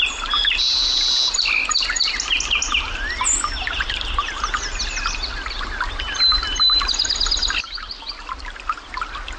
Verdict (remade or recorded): recorded